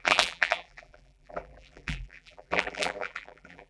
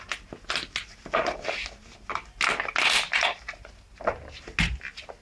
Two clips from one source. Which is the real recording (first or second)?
second